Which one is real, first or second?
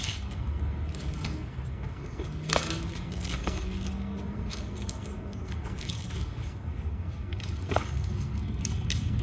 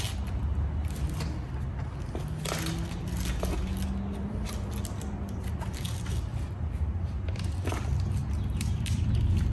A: second